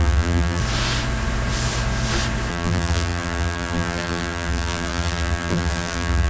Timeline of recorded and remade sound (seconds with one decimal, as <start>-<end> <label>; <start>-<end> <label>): 0.0-0.6 remade; 0.6-2.5 recorded; 2.5-6.3 remade